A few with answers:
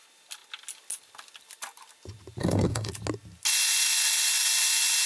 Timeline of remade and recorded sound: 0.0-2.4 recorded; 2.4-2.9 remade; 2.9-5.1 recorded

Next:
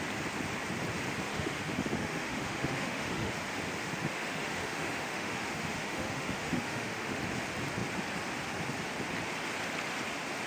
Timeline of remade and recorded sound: 0.0-1.3 recorded; 1.3-3.3 remade; 3.3-4.0 recorded; 4.0-7.2 remade; 7.2-10.5 recorded